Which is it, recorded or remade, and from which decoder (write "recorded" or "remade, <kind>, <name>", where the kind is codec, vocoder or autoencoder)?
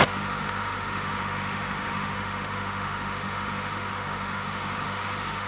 remade, autoencoder, DAC-VAE